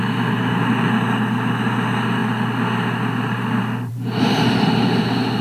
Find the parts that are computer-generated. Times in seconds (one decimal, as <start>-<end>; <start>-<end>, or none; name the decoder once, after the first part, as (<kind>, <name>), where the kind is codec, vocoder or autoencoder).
none